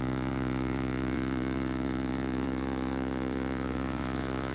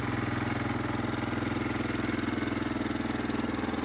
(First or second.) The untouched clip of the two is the second